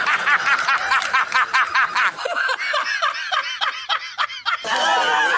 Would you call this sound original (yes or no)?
yes